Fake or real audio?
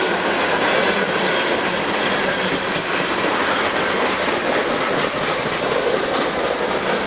real